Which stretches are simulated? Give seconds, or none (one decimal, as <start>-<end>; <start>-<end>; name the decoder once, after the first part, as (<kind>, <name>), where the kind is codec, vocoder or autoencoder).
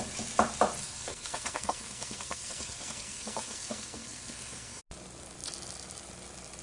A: 0.8-4.8 (codec, SNAC)